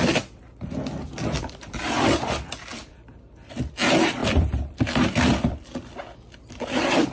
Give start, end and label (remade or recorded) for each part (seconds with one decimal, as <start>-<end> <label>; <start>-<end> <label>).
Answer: 0.0-2.7 recorded; 2.7-3.5 remade; 3.5-4.2 recorded; 4.2-6.4 remade; 6.4-7.1 recorded